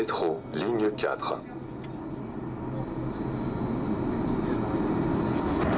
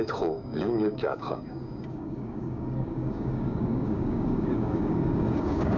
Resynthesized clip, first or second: second